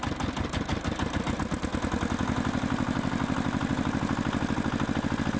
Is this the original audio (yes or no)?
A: yes